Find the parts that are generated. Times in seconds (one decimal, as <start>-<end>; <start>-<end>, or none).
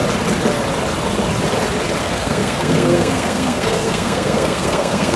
2.0-5.2